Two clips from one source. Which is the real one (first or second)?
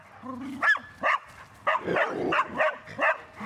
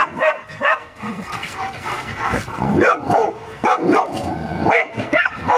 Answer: first